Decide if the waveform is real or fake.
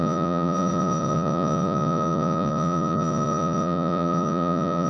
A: fake